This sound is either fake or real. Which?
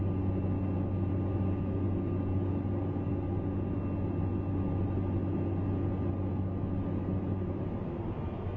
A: real